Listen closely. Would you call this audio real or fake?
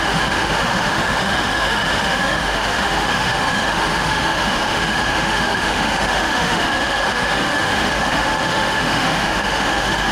fake